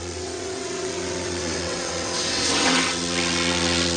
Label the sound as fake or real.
fake